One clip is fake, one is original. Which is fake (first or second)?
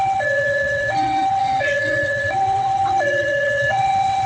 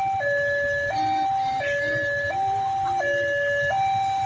first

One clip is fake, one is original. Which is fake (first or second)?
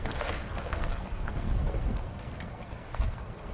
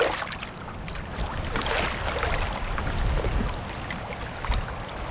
first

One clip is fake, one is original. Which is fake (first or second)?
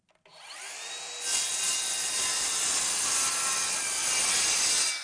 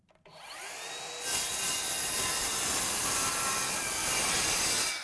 second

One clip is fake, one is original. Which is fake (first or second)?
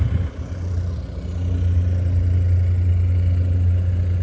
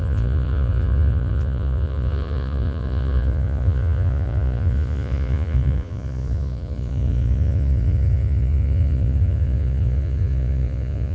second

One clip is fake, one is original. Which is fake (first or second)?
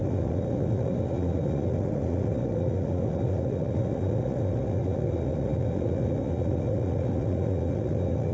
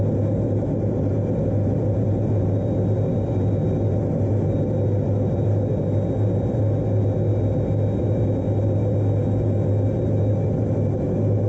first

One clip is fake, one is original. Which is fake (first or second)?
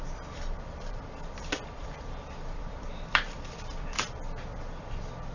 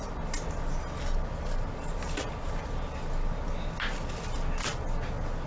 first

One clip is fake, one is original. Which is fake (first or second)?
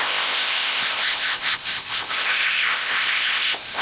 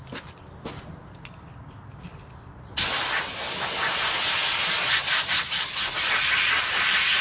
first